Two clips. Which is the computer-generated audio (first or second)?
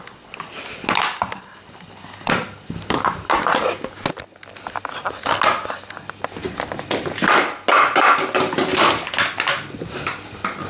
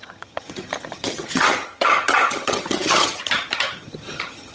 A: second